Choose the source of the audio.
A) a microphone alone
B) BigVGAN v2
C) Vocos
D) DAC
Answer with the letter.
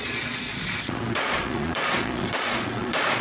C